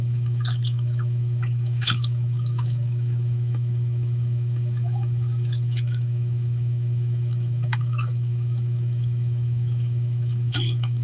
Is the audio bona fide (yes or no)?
no